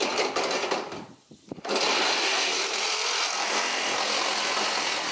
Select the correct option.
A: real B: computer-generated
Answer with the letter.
A